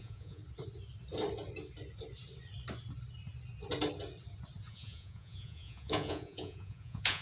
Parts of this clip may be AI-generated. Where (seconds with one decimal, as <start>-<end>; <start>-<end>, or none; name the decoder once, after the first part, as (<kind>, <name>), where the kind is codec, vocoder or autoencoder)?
0.0-0.4 (vocoder, Vocos); 4.7-7.2